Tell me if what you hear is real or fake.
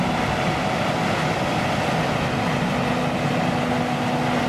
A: real